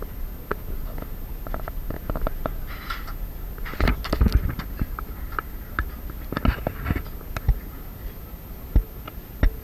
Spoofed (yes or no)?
no